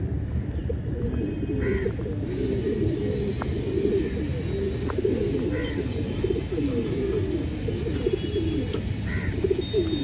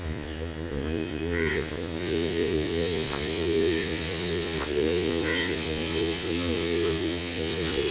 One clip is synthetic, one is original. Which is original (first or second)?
first